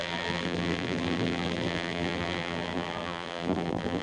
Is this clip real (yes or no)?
no